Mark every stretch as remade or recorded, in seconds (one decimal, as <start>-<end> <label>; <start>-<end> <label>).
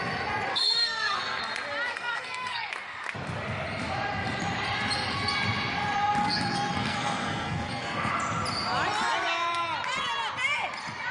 0.0-0.5 recorded; 0.5-1.4 remade; 1.4-1.9 recorded; 1.9-2.7 remade; 2.7-6.2 recorded; 6.2-8.1 remade; 8.1-11.1 recorded